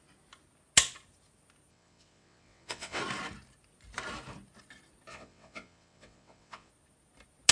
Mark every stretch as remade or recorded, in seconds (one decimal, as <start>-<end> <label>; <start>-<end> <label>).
0.0-1.7 recorded; 1.7-3.0 remade; 3.0-5.1 recorded; 5.1-6.7 remade; 6.7-7.5 recorded